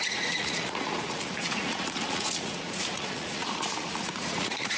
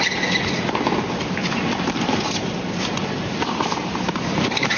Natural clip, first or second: second